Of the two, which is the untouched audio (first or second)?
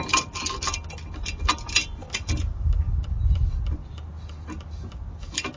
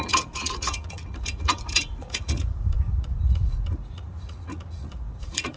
first